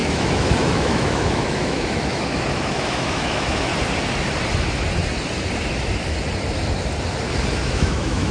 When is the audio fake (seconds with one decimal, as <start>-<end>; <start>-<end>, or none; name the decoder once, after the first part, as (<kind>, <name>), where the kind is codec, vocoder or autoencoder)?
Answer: 0.0-3.7 (autoencoder, DAC-VAE); 7.5-8.3